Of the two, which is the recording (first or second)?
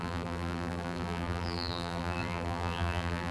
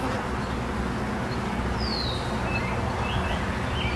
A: second